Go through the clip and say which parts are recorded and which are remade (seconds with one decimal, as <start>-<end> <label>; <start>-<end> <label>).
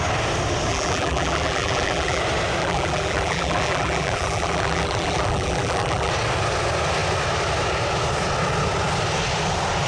0.0-0.7 recorded; 0.7-2.2 remade; 2.2-2.6 recorded; 2.6-6.1 remade; 6.1-9.9 recorded